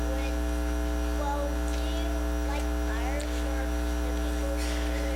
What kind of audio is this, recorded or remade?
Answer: recorded